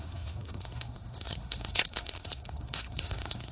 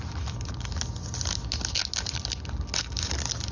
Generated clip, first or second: first